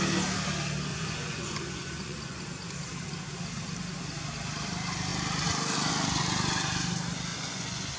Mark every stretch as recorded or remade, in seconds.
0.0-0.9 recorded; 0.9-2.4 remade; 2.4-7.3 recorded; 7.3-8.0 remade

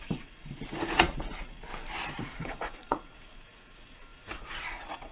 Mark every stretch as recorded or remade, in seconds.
0.0-1.7 remade; 1.7-2.2 recorded; 2.2-5.1 remade